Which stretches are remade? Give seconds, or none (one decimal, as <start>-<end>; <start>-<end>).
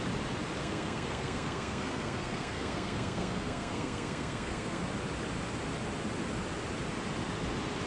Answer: 0.6-4.8